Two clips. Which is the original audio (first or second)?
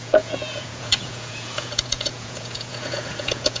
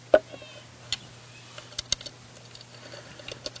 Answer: second